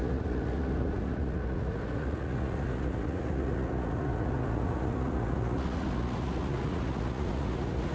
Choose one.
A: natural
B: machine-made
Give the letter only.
B